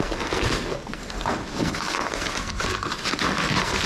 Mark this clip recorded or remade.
remade